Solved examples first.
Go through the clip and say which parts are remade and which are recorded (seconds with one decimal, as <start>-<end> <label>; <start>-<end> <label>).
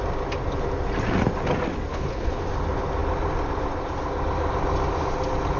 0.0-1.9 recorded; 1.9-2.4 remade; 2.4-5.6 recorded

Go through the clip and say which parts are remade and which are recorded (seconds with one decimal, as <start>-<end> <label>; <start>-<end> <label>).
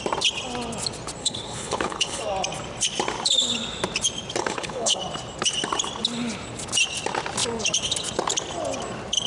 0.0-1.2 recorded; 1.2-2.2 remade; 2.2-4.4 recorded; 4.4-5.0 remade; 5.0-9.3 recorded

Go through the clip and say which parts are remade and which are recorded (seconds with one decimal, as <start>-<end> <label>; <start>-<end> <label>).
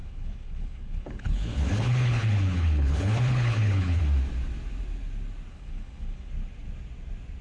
0.0-4.0 remade; 4.0-5.5 recorded; 5.5-6.3 remade; 6.3-7.4 recorded